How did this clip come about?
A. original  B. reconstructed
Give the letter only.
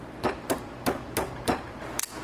B